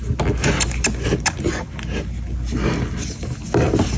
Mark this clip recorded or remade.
recorded